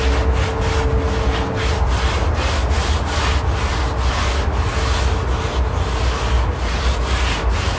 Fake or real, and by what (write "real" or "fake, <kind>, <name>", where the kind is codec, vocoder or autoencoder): real